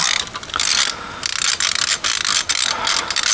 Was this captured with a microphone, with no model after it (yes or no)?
yes